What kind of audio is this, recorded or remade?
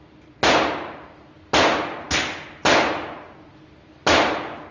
recorded